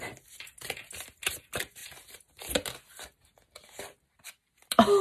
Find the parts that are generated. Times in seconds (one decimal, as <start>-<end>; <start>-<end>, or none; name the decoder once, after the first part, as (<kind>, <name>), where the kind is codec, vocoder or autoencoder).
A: none